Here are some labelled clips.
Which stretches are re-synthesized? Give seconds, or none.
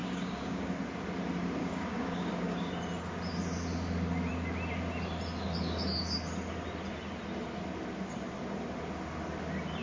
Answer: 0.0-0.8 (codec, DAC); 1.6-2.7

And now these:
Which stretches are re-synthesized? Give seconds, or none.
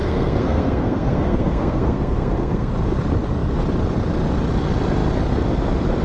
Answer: 0.0-2.7 (codec, SNAC)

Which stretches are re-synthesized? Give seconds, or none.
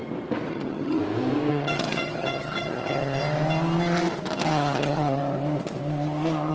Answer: 0.5-1.0 (vocoder, HiFi-GAN); 1.5-3.2; 4.5-5.2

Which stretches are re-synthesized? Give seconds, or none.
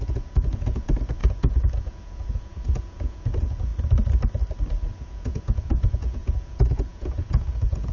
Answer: 0.0-3.7 (vocoder, Vocos); 4.9-7.9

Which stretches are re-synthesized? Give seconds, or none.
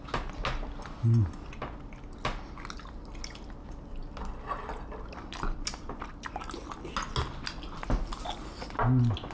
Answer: none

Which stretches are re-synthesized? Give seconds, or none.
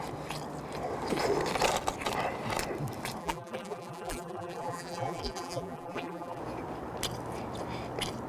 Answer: 3.2-6.4 (vocoder, BigVGAN v2)